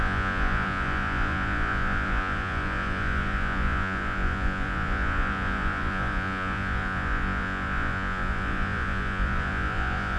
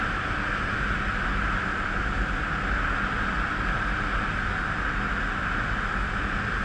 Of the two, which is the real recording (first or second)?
second